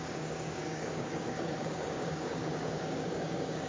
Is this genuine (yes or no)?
no